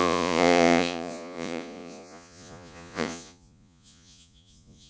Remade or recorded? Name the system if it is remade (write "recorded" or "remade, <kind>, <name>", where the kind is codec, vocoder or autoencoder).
remade, vocoder, Vocos